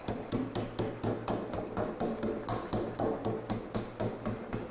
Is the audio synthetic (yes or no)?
no